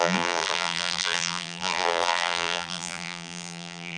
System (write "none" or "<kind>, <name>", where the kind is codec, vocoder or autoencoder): vocoder, BigVGAN v2